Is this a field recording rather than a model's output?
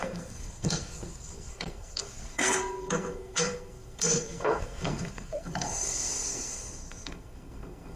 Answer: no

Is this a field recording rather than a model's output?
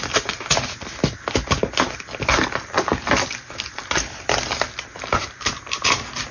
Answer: yes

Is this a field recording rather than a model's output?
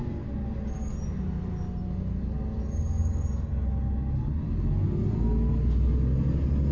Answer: yes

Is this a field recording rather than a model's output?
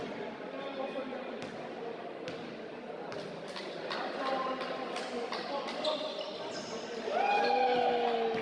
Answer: yes